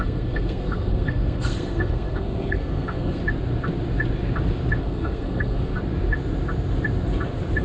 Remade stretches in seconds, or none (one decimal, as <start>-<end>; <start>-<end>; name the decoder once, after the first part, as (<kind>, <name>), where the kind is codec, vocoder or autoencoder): 0.0-3.2 (codec, SNAC); 4.8-5.8